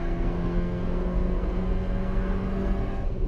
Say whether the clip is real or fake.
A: fake